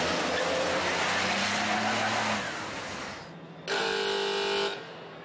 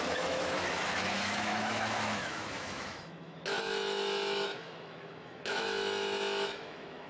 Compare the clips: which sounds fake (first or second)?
second